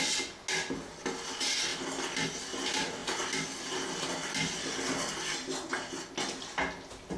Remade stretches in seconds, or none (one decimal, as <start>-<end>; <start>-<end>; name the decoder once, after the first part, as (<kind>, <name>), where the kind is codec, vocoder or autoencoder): none